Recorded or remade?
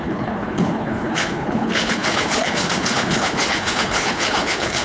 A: remade